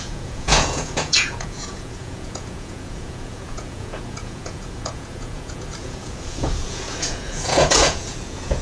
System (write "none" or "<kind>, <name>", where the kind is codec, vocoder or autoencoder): vocoder, Vocos